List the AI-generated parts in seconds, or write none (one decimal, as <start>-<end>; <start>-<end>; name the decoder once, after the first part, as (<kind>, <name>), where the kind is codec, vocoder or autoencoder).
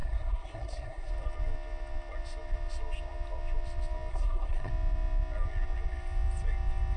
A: 0.0-1.1 (codec, SNAC); 4.1-4.7